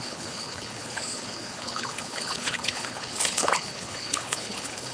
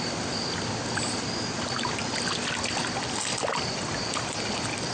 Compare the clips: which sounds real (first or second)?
second